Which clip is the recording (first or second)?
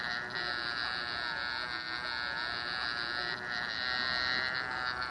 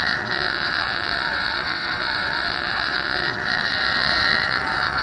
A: first